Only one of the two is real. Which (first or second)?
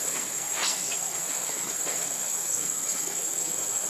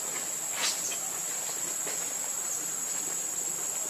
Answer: second